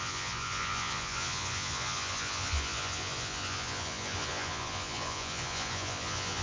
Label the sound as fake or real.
fake